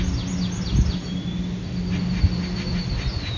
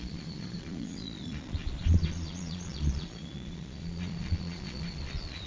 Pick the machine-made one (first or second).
second